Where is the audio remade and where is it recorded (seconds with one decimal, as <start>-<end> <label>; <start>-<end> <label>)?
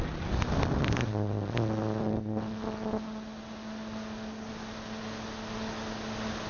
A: 0.0-6.5 recorded